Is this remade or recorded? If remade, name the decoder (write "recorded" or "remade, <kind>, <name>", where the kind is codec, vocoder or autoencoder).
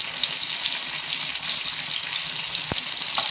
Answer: recorded